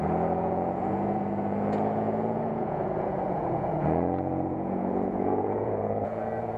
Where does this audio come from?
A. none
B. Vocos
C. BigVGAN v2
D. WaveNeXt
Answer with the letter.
B